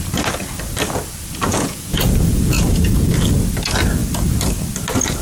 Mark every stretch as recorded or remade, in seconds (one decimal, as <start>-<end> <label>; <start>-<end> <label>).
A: 0.0-1.5 recorded; 1.5-3.1 remade; 3.1-5.2 recorded